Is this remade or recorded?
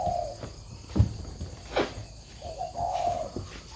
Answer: recorded